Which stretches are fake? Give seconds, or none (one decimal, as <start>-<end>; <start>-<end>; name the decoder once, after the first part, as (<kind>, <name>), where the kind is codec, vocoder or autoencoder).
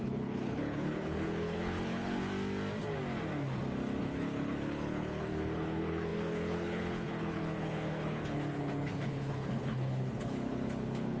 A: 0.0-2.3 (codec, HILCodec); 4.0-11.2